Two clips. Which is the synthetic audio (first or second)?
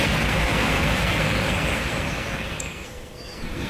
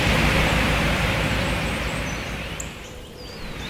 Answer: first